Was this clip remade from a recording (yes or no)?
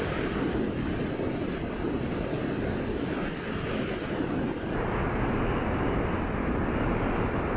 no